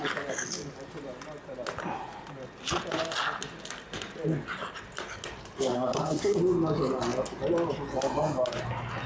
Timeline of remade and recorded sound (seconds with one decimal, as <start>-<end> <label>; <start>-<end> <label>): 0.0-5.7 recorded; 5.7-6.4 remade; 6.4-9.1 recorded